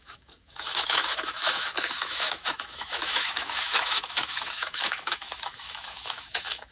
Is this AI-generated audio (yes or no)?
yes